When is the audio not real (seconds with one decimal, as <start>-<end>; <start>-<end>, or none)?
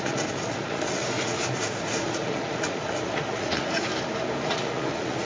0.0-3.9; 4.4-5.2